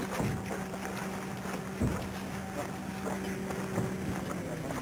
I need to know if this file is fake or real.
real